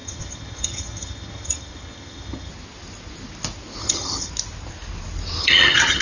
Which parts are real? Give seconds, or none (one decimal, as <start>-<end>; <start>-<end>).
2.5-3.8; 4.3-5.4